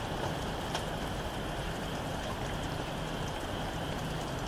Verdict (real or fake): fake